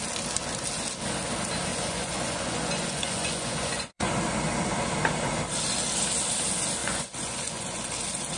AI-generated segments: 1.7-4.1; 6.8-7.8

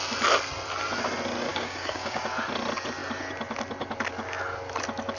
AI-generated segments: 1.5-2.2

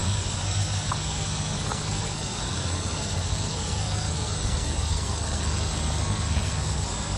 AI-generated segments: 0.0-7.2

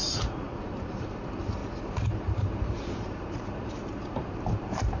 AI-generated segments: 0.0-5.0

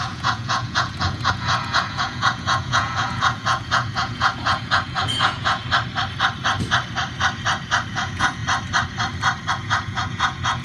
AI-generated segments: 0.0-5.6; 7.9-8.4; 9.5-10.6